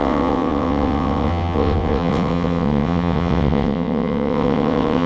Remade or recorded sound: remade